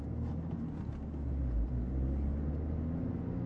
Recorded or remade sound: recorded